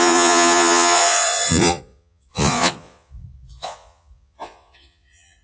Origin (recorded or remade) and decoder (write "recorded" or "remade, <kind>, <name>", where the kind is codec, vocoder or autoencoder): remade, vocoder, Vocos